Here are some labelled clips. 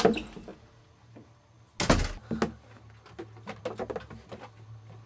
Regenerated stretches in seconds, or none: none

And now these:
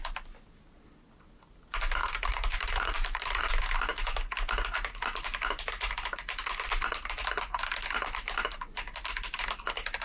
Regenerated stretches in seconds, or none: 2.0-3.4 (vocoder, BigVGAN v2)